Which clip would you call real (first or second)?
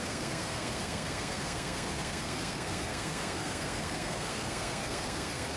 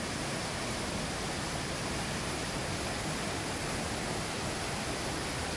second